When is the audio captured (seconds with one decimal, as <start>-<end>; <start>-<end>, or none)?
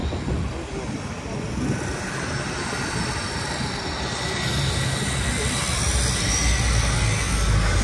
0.0-7.8